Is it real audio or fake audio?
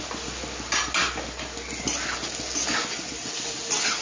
real